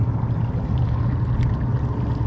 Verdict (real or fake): real